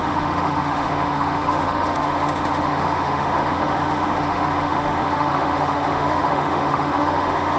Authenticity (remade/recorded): remade